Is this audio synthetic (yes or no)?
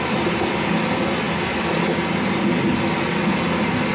no